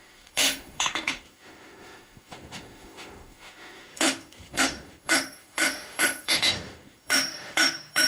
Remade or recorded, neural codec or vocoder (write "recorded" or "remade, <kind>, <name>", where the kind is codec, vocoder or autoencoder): remade, autoencoder, DAC-VAE